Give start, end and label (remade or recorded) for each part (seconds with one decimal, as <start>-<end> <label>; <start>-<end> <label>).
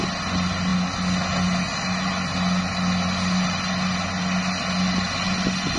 0.0-5.8 recorded